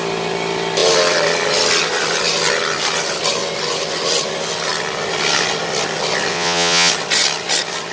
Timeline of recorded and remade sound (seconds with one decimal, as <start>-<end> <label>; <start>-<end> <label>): 0.0-6.3 recorded; 6.3-6.9 remade; 6.9-7.9 recorded